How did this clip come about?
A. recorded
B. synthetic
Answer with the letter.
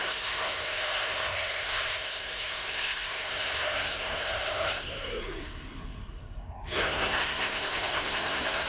B